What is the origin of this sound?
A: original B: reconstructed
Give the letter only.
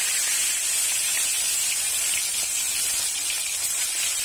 A